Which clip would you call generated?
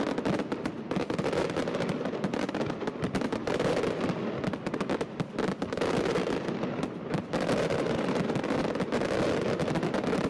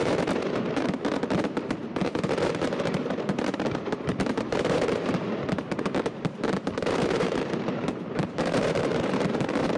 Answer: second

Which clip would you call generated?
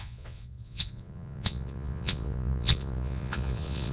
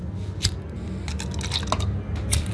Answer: first